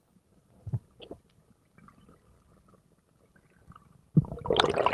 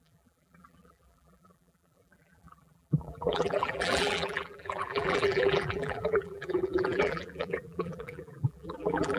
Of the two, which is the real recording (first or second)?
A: first